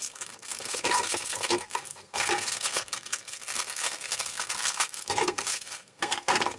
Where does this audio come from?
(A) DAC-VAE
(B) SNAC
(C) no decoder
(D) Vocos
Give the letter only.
B